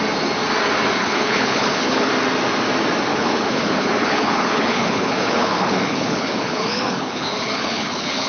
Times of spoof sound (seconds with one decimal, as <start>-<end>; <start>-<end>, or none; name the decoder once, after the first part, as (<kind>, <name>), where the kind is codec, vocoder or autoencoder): 1.0-2.1 (codec, HILCodec); 3.1-8.3